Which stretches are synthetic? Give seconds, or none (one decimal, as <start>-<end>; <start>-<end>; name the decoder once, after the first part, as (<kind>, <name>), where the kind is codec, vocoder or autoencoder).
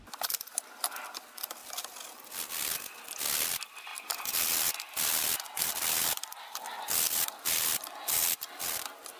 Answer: none